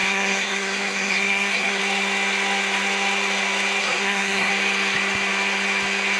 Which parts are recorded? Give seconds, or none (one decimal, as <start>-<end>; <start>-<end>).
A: 1.8-3.8; 4.5-6.2